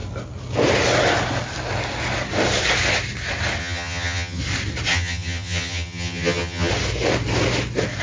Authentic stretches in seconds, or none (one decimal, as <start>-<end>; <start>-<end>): 0.0-3.6; 4.4-4.9; 6.7-8.0

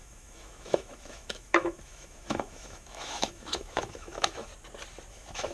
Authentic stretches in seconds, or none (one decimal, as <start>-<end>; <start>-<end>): 4.5-5.1

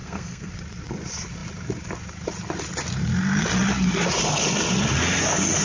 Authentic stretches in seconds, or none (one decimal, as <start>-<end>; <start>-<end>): 0.5-5.6

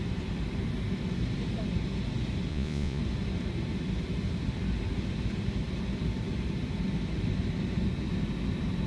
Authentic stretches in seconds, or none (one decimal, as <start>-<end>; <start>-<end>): 0.0-2.5; 3.0-8.9

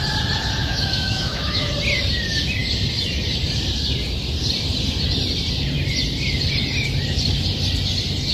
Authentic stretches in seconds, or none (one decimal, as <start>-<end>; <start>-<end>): 0.0-0.6; 1.7-8.3

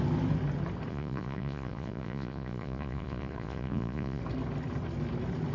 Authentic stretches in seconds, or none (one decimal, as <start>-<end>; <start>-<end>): 0.0-0.9; 4.2-5.5